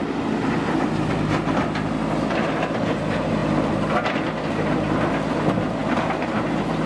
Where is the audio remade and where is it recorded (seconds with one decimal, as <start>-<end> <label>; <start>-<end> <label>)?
0.0-6.9 recorded